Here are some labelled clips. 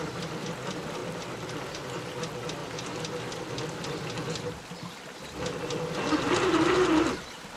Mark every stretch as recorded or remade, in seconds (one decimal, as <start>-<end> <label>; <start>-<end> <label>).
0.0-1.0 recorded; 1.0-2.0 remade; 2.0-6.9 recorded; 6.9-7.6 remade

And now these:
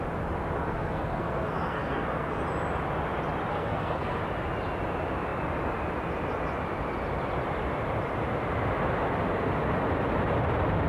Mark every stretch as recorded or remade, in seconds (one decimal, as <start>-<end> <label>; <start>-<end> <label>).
0.0-0.6 recorded; 0.6-2.4 remade; 2.4-3.5 recorded; 3.5-4.2 remade; 4.2-10.9 recorded

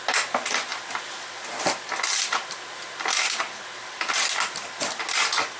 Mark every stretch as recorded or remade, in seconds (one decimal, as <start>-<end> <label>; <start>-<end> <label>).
0.0-5.6 recorded